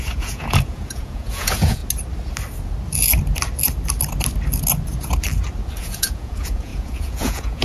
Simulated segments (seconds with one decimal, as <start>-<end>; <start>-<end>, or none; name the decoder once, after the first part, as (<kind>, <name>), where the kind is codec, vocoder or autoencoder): 0.0-1.8 (vocoder, Vocos); 5.8-7.6